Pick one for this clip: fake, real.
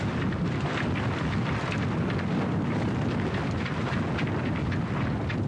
real